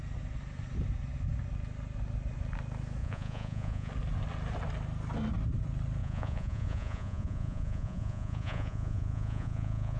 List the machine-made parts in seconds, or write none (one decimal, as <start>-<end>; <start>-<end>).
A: 3.0-3.9; 6.0-10.0